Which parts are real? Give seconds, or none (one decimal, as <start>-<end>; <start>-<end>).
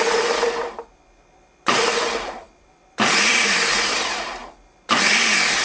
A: none